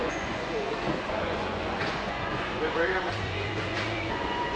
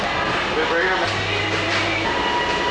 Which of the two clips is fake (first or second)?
first